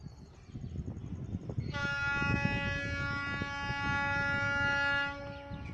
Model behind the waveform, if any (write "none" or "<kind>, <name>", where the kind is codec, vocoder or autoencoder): none